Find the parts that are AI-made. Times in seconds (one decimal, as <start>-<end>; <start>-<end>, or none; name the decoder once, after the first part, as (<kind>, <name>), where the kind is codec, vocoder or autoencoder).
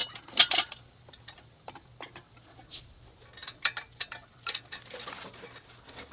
0.0-3.0 (vocoder, BigVGAN v2); 3.4-4.6